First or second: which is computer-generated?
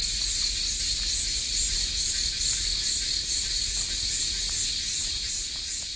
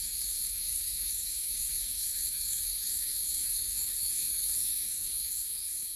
second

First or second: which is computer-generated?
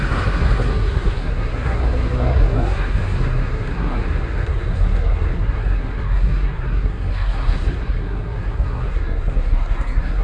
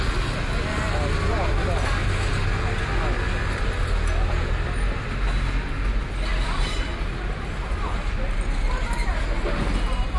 first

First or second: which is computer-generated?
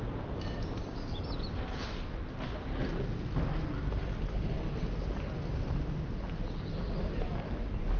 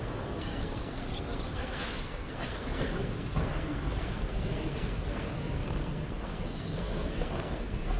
second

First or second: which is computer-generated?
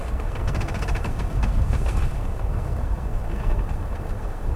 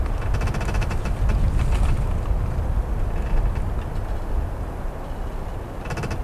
first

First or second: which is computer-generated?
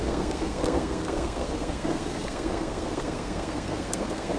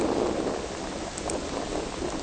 first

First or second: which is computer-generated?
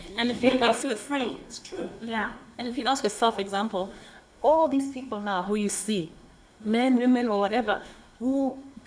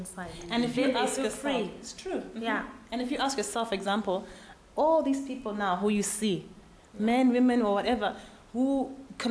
first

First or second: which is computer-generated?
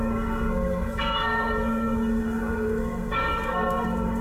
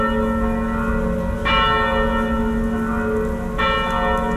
first